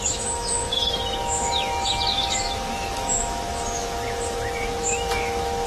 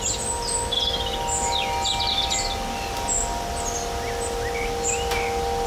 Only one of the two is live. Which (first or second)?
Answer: second